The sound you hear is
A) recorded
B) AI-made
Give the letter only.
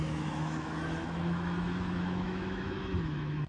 B